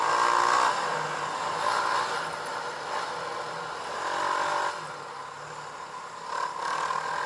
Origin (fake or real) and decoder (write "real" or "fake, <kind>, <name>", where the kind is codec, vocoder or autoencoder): real